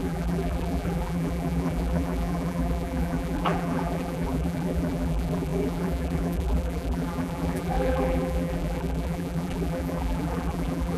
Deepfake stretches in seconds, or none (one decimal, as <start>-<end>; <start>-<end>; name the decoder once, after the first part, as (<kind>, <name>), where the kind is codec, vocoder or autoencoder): 0.0-11.0 (vocoder, BigVGAN v2)